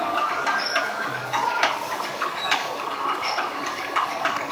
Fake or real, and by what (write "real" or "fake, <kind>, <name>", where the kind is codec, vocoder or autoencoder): fake, codec, DAC